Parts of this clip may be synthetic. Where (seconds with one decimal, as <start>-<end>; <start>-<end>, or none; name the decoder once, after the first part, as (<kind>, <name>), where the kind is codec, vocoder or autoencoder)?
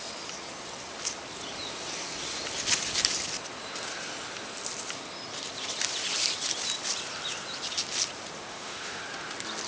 8.5-9.0 (autoencoder, DAC-VAE)